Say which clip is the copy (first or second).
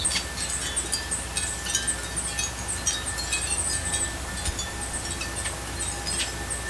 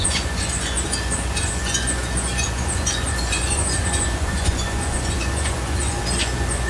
second